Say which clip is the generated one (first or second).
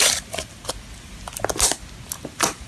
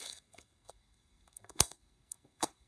second